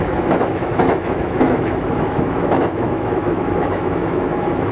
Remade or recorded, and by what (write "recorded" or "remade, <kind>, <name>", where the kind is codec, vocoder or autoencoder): remade, autoencoder, DAC-VAE